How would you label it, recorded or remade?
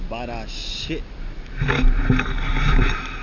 recorded